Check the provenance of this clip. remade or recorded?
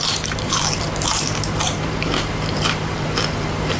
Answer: remade